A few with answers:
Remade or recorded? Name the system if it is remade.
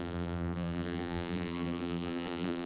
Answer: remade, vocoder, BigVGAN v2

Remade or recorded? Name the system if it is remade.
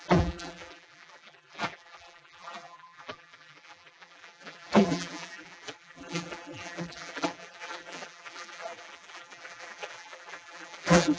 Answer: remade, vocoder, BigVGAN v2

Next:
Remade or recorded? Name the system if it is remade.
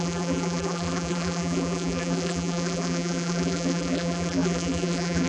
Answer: remade, vocoder, BigVGAN v2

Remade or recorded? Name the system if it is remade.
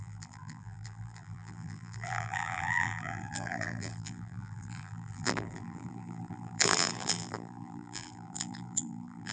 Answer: remade, vocoder, BigVGAN v2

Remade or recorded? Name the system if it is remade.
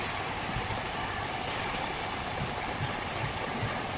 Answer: recorded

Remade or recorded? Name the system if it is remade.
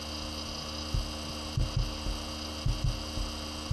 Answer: recorded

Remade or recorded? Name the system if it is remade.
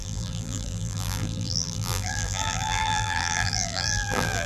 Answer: remade, vocoder, BigVGAN v2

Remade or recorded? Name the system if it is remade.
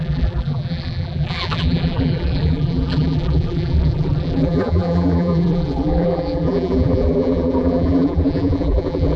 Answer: remade, vocoder, BigVGAN v2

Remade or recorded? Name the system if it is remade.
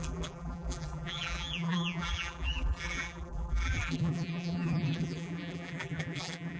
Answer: remade, vocoder, BigVGAN v2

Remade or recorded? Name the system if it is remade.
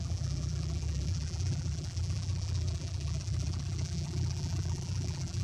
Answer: remade, vocoder, BigVGAN v2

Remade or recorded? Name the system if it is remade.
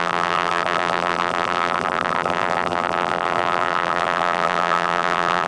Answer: remade, vocoder, BigVGAN v2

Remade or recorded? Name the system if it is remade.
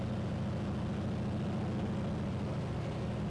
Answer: recorded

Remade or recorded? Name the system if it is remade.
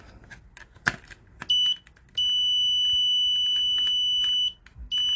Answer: recorded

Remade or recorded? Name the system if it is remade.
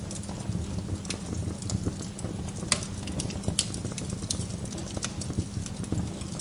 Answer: recorded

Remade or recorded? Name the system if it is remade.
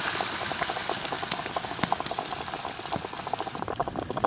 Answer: recorded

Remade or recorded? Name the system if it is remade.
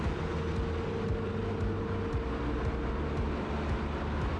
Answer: recorded